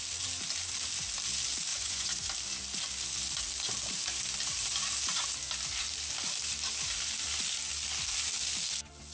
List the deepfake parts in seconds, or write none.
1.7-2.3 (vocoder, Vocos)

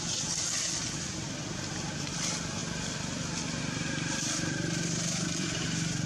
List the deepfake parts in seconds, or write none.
none

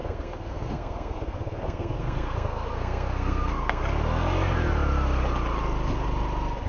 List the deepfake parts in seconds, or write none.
0.0-3.8 (codec, SNAC)